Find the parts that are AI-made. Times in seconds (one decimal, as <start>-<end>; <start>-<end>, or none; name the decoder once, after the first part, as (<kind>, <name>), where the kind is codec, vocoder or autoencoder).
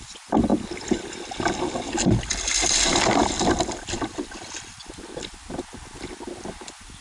none